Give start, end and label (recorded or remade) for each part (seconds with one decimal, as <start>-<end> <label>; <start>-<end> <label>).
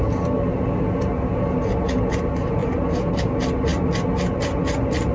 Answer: 0.0-5.1 recorded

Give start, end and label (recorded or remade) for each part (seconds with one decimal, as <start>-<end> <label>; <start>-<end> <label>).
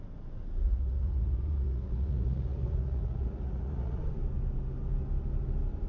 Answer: 0.0-0.6 recorded; 0.6-4.0 remade; 4.0-5.9 recorded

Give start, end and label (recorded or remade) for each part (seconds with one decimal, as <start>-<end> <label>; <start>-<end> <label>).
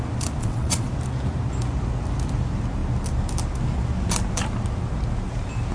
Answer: 0.0-0.4 recorded; 0.4-0.9 remade; 0.9-5.7 recorded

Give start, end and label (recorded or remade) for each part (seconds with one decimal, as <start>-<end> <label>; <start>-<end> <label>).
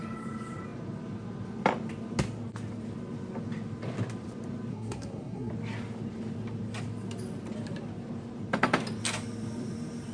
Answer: 0.0-4.7 recorded; 4.7-5.5 remade; 5.5-10.1 recorded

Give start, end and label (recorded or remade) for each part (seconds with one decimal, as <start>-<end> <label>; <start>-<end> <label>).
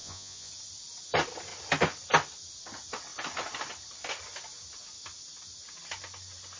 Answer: 0.0-0.5 remade; 0.5-6.6 recorded